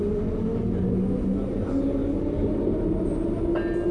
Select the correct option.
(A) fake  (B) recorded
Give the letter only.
B